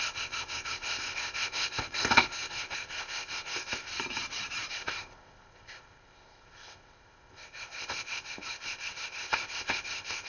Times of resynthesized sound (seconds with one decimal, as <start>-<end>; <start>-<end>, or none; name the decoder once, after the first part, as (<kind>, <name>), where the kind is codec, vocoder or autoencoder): 0.0-3.9 (codec, ZipCodec); 4.7-10.3